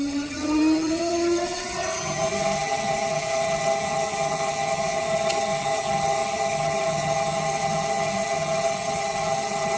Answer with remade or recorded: remade